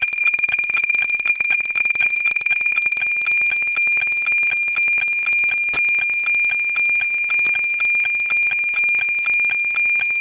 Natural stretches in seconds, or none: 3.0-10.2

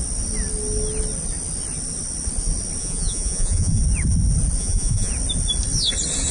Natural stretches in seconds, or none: 0.0-2.8; 3.8-4.6; 5.1-6.3

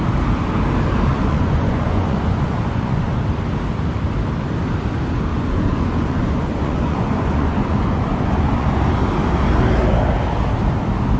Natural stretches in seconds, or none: 0.0-1.1; 3.2-5.3; 8.8-11.2

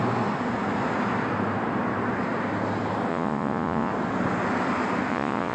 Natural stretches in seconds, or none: 0.0-3.1; 3.9-5.1

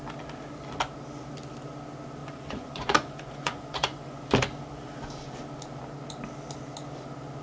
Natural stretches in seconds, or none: 0.0-2.2; 4.2-7.4

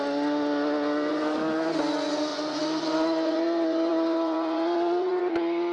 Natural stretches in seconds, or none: 0.0-1.1; 1.7-2.3; 5.2-5.7